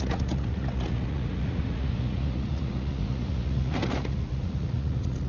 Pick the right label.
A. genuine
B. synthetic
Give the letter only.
B